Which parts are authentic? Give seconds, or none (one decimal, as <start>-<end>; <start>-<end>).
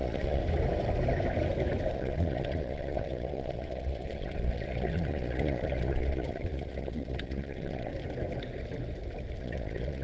0.4-1.9; 7.9-9.4